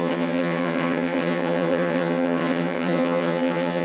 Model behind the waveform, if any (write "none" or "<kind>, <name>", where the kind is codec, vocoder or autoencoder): vocoder, HiFi-GAN